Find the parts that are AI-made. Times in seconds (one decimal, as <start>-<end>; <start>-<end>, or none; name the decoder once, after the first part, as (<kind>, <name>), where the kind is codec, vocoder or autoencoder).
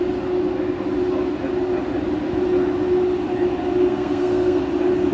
3.9-4.6 (codec, SNAC)